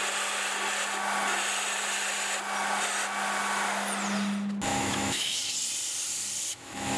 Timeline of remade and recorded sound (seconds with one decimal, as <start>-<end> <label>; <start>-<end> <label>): 0.0-4.7 recorded; 4.7-5.4 remade; 5.4-6.5 recorded; 6.5-7.0 remade